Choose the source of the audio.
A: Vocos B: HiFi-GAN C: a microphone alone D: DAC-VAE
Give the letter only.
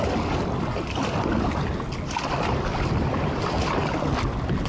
C